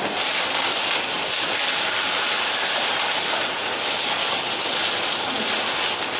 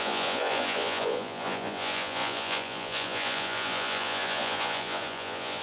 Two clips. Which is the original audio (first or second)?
first